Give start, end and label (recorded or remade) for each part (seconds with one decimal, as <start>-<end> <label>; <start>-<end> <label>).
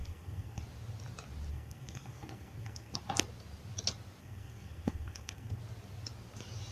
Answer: 0.0-0.6 remade; 0.6-1.5 recorded; 1.5-3.0 remade; 3.0-4.2 recorded; 4.2-5.6 remade; 5.6-6.7 recorded